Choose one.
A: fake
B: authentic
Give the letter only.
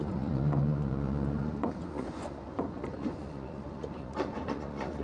A